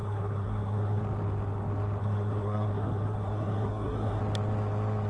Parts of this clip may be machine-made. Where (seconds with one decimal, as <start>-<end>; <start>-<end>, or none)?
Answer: 0.0-1.0; 2.0-4.2